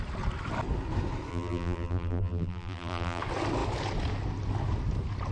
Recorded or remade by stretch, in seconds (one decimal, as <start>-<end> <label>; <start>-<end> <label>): 0.0-1.3 recorded; 1.3-3.2 remade; 3.2-5.3 recorded